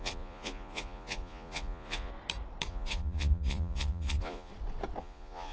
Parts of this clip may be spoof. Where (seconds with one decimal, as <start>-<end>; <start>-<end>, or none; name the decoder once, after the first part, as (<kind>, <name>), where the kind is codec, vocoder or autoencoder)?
0.0-2.1 (vocoder, Vocos); 2.7-4.5; 5.0-5.5